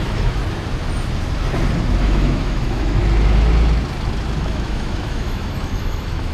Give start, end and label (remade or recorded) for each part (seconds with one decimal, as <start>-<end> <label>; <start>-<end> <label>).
0.0-0.4 remade; 0.4-2.0 recorded; 2.0-3.0 remade; 3.0-4.4 recorded; 4.4-6.3 remade